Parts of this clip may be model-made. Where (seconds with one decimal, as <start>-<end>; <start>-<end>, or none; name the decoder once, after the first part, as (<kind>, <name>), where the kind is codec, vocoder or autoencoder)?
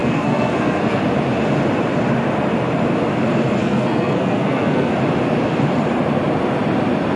0.0-1.0 (codec, SNAC); 3.6-4.9